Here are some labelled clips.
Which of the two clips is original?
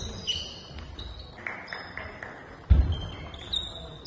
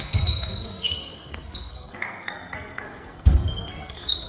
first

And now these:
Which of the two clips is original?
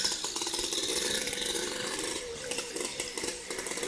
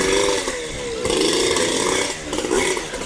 second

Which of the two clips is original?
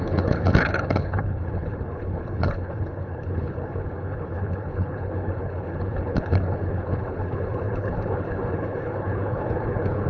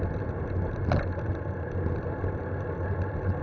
second